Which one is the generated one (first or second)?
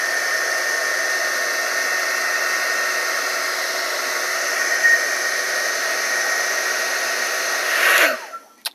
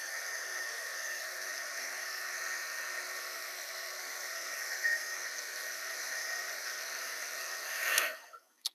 second